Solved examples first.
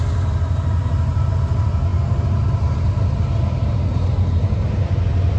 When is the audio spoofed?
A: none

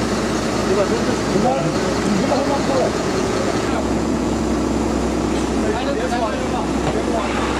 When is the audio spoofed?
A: 2.4-4.4; 5.6-6.6

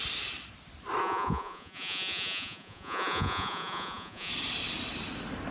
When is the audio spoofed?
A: 1.0-4.3

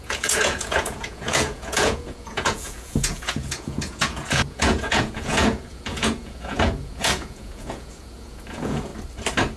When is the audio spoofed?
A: 0.0-8.9

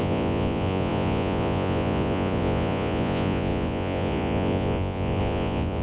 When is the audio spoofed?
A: 0.0-5.8